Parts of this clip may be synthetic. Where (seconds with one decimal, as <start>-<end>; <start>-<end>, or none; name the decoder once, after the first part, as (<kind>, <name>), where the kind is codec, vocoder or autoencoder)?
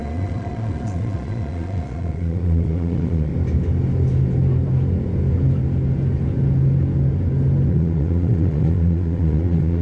0.0-3.3 (vocoder, Vocos); 7.7-9.8